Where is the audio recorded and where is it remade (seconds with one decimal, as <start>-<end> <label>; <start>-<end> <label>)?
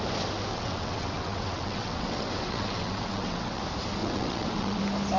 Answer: 0.0-0.5 recorded; 0.5-3.6 remade; 3.6-4.0 recorded; 4.0-4.8 remade; 4.8-5.2 recorded